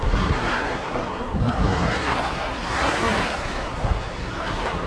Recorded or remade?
remade